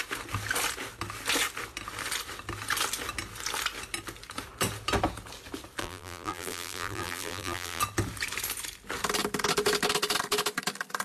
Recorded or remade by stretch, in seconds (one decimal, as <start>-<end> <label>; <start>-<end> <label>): 0.0-5.8 recorded; 5.8-7.8 remade; 7.8-11.0 recorded